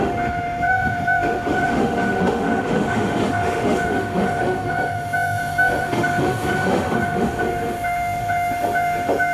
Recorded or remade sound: remade